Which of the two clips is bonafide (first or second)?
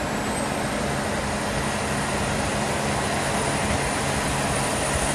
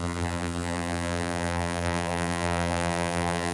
first